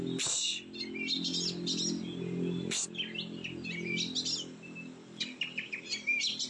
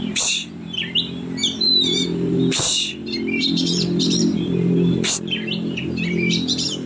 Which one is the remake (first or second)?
second